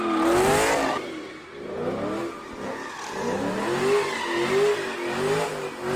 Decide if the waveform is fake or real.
real